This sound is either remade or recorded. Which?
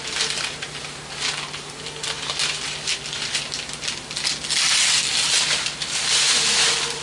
recorded